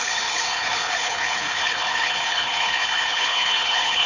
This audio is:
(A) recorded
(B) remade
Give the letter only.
B